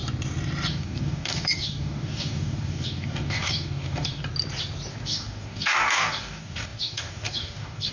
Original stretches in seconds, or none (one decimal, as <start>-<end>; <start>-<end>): 0.0-0.7; 4.2-4.9